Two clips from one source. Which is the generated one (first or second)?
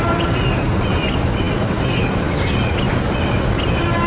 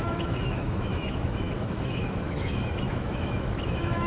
second